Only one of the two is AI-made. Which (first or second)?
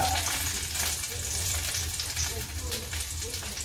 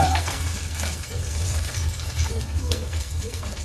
second